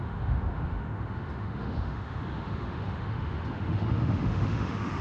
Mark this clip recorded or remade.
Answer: remade